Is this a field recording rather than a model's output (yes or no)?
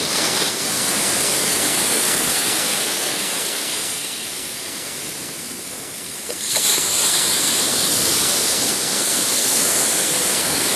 no